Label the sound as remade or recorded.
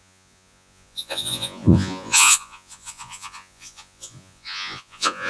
remade